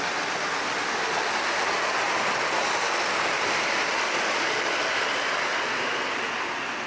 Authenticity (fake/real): real